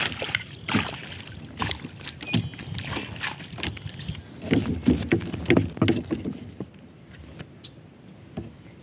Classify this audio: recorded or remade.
recorded